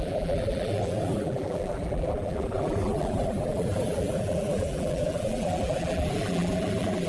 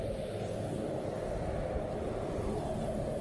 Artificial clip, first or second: first